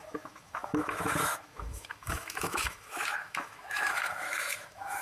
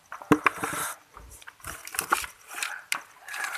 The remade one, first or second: first